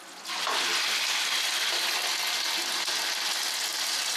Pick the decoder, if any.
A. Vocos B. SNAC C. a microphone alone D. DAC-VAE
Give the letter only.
C